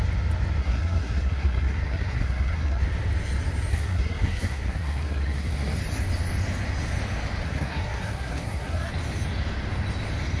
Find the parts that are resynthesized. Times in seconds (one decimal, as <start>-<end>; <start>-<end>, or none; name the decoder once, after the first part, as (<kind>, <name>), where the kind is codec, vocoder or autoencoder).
0.6-2.8 (codec, SNAC); 3.7-5.8; 7.4-8.9